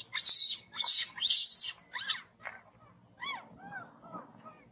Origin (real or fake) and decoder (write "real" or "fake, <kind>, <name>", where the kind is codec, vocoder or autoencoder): real